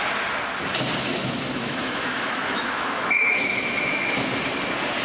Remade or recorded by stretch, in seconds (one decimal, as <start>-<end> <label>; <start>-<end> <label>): 0.0-1.2 recorded; 1.2-4.2 remade; 4.2-5.0 recorded